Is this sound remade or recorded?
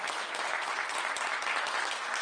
recorded